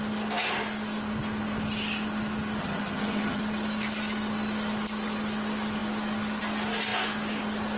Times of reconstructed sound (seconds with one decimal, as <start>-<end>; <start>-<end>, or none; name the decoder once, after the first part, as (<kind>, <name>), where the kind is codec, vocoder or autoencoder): 2.6-3.4 (vocoder, HiFi-GAN)